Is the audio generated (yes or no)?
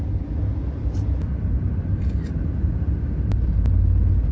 yes